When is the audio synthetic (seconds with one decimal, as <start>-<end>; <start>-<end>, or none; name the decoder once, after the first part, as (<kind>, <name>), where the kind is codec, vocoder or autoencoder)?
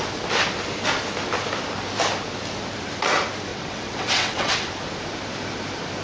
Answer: 3.5-4.7 (vocoder, WaveNeXt)